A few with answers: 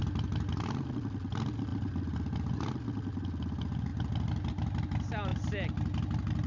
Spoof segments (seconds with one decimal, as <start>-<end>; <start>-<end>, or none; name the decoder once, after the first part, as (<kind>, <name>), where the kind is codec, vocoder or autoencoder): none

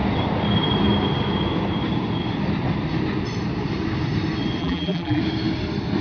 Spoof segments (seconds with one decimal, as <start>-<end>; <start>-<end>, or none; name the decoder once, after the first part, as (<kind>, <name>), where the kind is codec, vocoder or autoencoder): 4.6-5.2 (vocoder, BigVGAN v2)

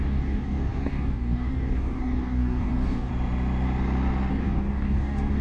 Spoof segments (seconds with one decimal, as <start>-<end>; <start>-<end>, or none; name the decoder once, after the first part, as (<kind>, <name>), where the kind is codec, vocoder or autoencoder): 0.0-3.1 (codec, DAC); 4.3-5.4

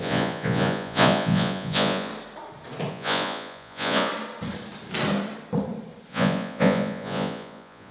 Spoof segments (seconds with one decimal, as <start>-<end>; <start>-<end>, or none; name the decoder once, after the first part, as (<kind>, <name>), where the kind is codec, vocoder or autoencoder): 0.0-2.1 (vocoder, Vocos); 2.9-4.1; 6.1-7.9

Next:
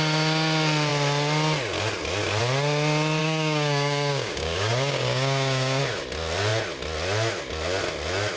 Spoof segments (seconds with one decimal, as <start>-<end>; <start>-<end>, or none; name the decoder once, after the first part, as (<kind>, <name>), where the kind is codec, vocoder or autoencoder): 3.2-5.8 (codec, DAC)